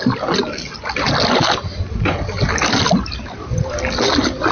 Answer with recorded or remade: recorded